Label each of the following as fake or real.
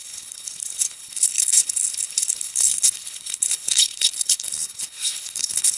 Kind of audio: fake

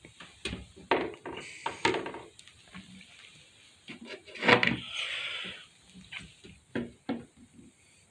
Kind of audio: real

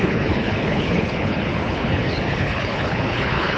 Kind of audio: fake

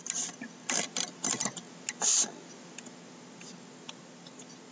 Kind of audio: real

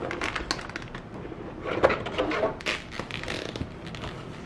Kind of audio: real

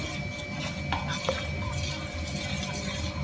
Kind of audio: real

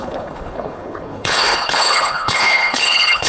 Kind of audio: fake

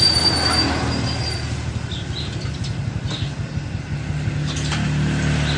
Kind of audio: real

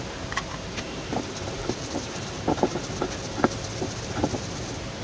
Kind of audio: real